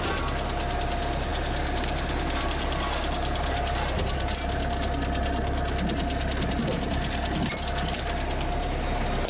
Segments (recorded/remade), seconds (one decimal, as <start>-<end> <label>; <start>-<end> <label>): 0.0-9.3 recorded